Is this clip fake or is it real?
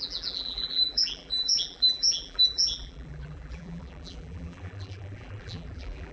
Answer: fake